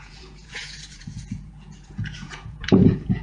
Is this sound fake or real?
fake